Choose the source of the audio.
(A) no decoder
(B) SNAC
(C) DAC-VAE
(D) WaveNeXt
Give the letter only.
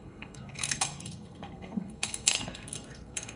B